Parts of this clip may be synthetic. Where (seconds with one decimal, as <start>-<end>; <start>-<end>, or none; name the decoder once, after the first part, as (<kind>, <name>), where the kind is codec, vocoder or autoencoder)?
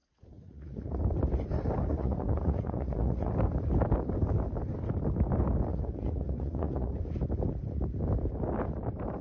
0.0-1.0 (vocoder, Vocos); 1.9-3.3; 5.7-6.9